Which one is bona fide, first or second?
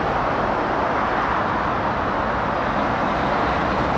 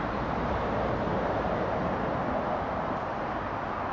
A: first